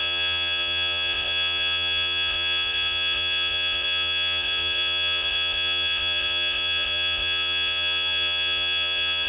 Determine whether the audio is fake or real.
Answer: fake